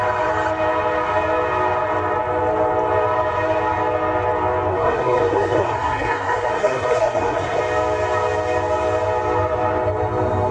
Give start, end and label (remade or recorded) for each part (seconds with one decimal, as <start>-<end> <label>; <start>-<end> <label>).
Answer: 0.0-4.7 recorded; 4.7-7.6 remade; 7.6-10.5 recorded